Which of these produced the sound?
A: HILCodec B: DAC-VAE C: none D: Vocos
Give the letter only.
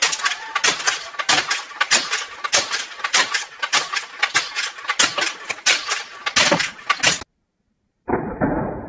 C